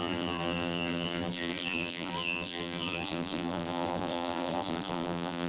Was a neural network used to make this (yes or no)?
yes